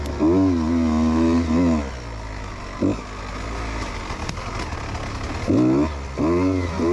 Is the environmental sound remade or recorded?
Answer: recorded